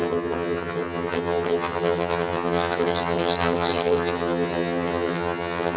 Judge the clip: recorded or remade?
remade